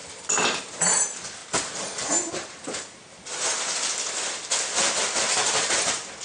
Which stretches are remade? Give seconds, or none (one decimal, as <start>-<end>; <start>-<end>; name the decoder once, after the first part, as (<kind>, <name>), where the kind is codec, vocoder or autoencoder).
0.6-1.4 (vocoder, BigVGAN v2); 2.3-6.2